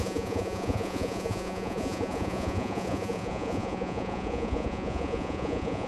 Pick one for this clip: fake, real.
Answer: fake